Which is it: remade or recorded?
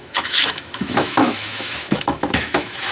remade